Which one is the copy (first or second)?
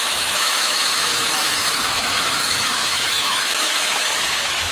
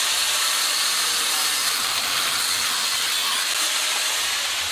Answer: first